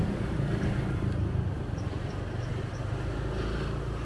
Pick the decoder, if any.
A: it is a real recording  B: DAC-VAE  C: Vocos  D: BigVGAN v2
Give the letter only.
A